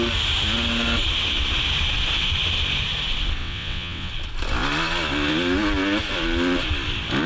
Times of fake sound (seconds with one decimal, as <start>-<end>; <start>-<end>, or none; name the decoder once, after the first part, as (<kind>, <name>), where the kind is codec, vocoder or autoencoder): 3.4-4.1 (vocoder, WaveNeXt)